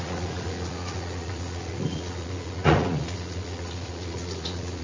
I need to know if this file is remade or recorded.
remade